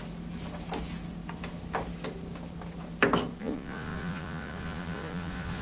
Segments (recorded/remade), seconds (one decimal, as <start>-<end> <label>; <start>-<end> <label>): 0.0-3.4 recorded; 3.4-5.6 remade